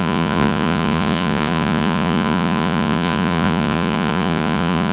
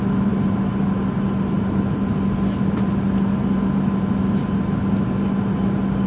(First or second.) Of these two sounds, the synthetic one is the first